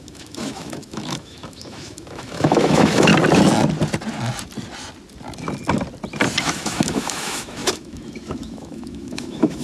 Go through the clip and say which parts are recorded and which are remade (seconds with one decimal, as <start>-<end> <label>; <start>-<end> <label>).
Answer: 0.0-3.1 remade; 3.1-6.4 recorded; 6.4-9.6 remade